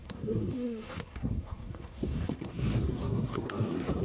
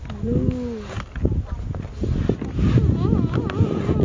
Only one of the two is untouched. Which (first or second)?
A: second